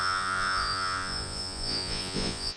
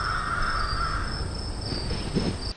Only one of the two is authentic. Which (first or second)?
second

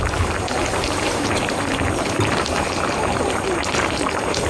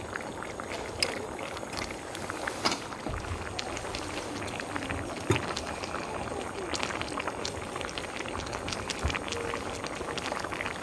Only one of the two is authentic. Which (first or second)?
second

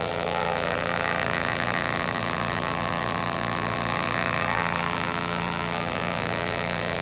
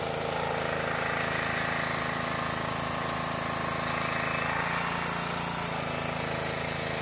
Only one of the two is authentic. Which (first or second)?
second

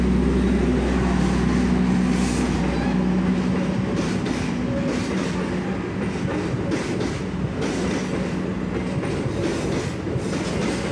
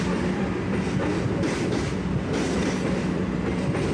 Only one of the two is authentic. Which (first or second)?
first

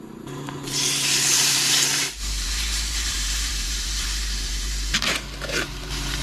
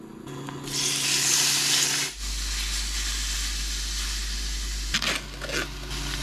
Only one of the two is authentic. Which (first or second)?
second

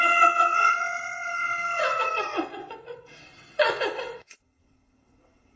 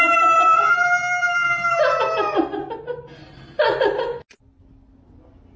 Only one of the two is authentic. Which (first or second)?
second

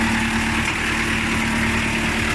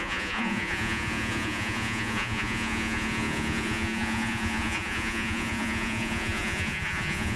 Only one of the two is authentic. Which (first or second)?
first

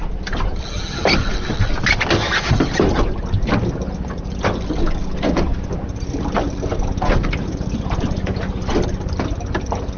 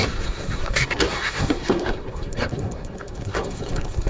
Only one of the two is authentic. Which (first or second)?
first